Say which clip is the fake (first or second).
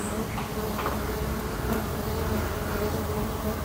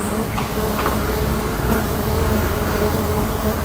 second